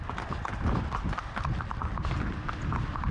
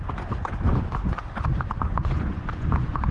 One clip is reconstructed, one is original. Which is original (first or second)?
first